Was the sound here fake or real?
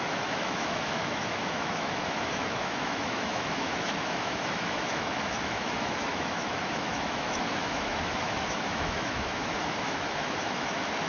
fake